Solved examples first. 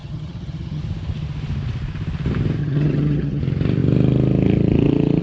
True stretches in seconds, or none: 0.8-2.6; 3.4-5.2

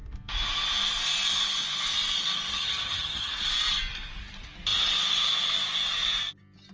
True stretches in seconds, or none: 0.0-2.5; 3.3-6.7

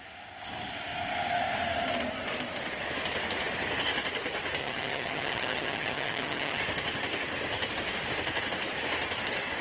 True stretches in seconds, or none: 0.0-4.6; 6.6-9.6

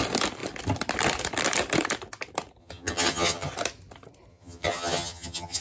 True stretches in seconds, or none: 0.0-2.6; 3.5-4.3

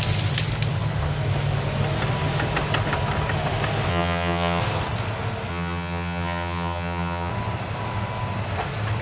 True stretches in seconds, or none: 0.0-3.9; 4.6-5.5; 7.3-9.0

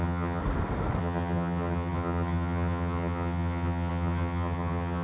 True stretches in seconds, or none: 0.4-1.0

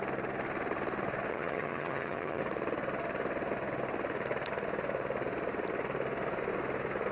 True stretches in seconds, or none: 0.0-1.3; 2.4-7.1